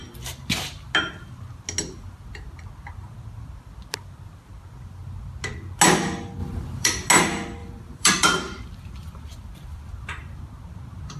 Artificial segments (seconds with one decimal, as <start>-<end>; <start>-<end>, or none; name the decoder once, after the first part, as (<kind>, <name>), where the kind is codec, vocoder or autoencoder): 6.4-7.1 (vocoder, BigVGAN v2); 7.6-10.4